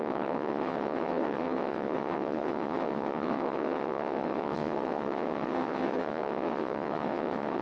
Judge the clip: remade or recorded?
remade